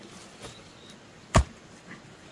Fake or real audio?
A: real